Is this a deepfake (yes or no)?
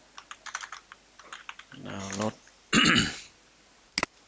no